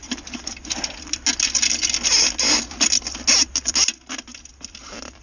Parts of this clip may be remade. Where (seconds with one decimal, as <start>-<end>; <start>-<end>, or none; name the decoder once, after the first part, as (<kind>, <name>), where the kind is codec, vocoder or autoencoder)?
none